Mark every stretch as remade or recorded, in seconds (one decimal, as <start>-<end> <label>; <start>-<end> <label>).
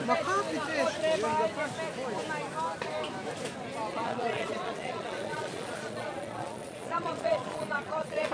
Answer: 0.0-3.9 recorded; 3.9-8.3 remade